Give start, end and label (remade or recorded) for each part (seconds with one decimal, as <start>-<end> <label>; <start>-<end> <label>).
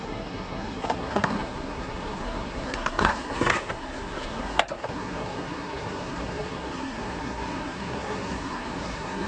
0.0-9.3 remade